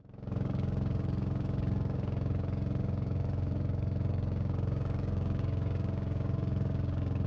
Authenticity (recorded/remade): remade